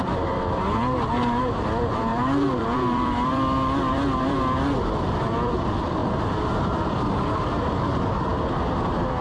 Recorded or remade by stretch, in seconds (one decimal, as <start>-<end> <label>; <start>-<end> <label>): 0.0-6.0 remade; 6.0-6.6 recorded; 6.6-8.3 remade; 8.3-9.2 recorded